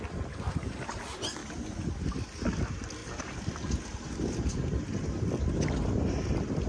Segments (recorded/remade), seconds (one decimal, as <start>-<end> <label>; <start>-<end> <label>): 0.0-1.4 recorded; 1.4-1.9 remade; 1.9-6.7 recorded